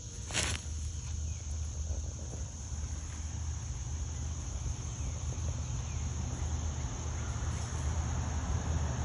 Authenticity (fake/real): real